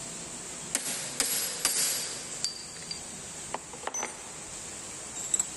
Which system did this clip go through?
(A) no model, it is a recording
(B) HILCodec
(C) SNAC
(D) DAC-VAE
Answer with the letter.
A